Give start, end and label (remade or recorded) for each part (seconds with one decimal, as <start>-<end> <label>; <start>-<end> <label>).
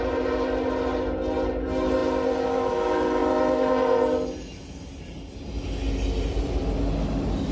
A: 0.0-7.5 recorded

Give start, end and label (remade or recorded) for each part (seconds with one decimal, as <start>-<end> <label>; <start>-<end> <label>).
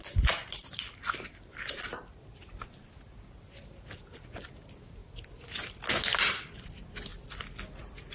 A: 0.0-0.6 recorded; 0.6-2.4 remade; 2.4-7.1 recorded; 7.1-7.6 remade; 7.6-8.1 recorded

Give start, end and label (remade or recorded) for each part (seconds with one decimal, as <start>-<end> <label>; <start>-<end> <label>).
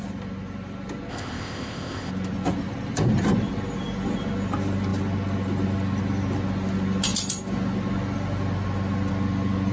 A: 0.0-1.1 recorded; 1.1-2.1 remade; 2.1-9.7 recorded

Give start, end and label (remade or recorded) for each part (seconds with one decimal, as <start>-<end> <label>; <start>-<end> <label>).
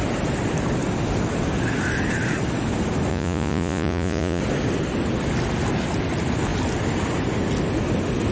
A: 0.0-3.1 recorded; 3.1-4.4 remade; 4.4-8.3 recorded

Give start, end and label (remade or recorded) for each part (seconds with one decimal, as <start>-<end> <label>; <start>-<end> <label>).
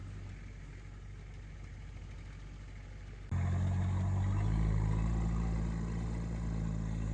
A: 0.0-7.1 recorded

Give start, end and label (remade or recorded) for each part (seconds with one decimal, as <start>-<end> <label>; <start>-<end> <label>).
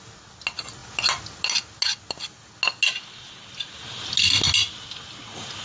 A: 0.0-5.6 recorded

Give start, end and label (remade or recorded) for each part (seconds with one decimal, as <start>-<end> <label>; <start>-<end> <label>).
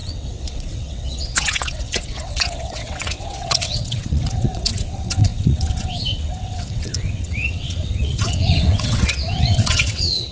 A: 0.0-10.3 remade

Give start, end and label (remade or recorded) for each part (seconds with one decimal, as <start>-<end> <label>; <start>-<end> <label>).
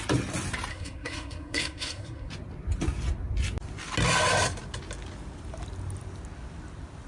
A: 0.0-0.7 recorded; 0.7-2.3 remade; 2.3-7.1 recorded